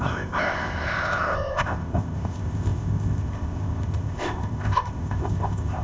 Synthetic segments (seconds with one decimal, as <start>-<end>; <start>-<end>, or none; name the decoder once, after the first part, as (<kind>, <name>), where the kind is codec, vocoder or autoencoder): 0.0-5.8 (codec, ZipCodec)